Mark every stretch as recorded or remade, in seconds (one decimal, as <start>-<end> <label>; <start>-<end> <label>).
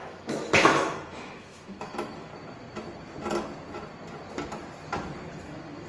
0.0-2.3 remade; 2.3-5.3 recorded; 5.3-5.9 remade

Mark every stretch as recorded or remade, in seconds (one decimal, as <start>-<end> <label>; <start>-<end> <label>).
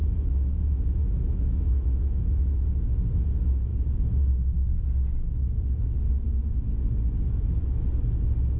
0.0-2.3 remade; 2.3-8.6 recorded